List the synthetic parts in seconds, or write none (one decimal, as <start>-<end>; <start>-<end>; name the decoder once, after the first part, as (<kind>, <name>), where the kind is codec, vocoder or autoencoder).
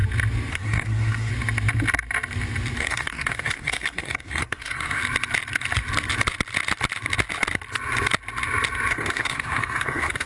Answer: 0.5-1.3 (codec, SNAC); 2.8-5.0; 8.9-10.3